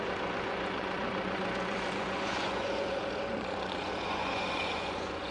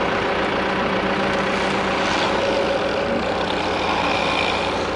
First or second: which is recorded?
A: second